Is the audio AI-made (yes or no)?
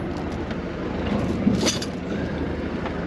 no